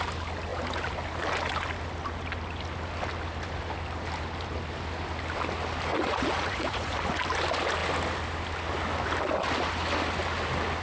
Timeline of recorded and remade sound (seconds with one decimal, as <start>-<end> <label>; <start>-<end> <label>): 0.0-5.9 recorded; 5.9-7.0 remade; 7.0-10.8 recorded